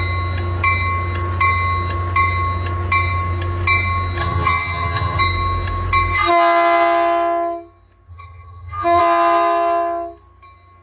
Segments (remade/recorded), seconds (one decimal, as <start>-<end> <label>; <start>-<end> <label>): 0.0-4.2 recorded; 4.2-5.2 remade; 5.2-8.1 recorded; 8.1-9.0 remade; 9.0-10.8 recorded